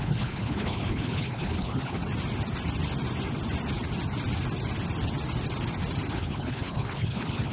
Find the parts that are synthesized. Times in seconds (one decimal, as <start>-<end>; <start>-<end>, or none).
0.0-2.0; 6.1-7.5